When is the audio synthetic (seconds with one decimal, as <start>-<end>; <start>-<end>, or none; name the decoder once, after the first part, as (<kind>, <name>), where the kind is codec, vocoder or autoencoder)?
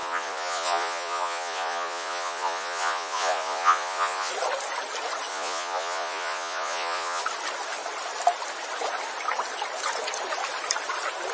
0.0-4.3 (vocoder, Vocos); 5.3-7.2